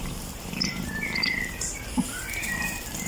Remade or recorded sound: remade